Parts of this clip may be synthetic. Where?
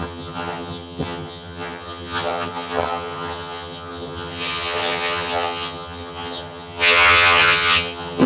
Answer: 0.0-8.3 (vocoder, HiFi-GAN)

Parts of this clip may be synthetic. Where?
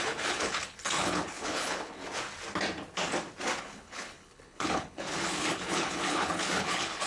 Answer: 0.0-2.0 (codec, HILCodec); 3.6-7.1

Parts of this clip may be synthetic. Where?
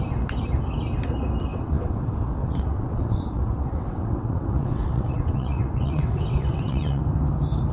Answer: 1.5-2.0 (vocoder, WaveNeXt); 2.4-7.0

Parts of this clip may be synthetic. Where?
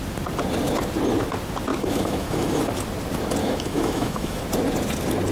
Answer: 1.7-2.6 (autoencoder, DAC-VAE); 3.4-4.4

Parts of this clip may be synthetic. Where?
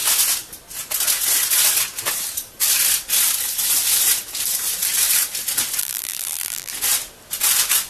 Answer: 5.8-6.7 (vocoder, BigVGAN v2)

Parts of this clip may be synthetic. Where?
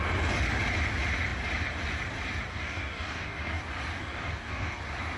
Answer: 2.5-3.6 (codec, DAC); 4.0-4.8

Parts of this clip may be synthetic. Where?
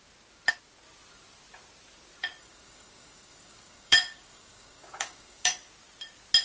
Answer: 2.4-5.5 (codec, DAC)